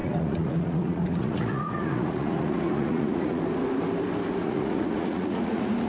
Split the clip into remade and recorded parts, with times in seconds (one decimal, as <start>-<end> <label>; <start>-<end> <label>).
0.0-3.4 remade; 3.4-4.4 recorded; 4.4-5.9 remade